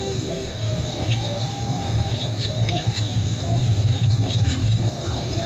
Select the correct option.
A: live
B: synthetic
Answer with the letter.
B